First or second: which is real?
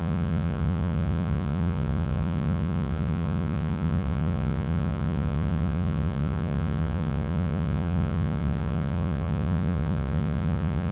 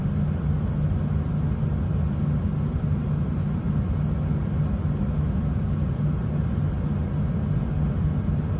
second